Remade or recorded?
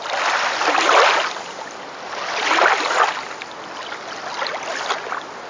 recorded